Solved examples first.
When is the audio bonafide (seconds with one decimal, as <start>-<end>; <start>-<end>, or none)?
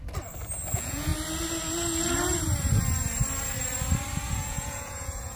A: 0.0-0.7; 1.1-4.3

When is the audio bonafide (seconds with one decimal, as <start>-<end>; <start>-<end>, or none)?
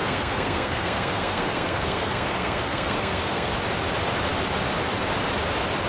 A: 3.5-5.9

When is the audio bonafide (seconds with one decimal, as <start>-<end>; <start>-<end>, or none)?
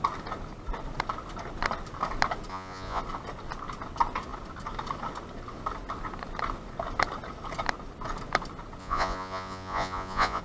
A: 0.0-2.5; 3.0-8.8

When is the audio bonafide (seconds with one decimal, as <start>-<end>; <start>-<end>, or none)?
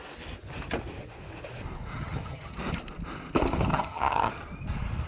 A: 0.0-1.9; 2.6-3.7; 4.3-5.1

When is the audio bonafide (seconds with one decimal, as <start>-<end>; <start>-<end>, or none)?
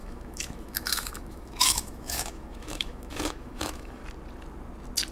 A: 4.0-5.1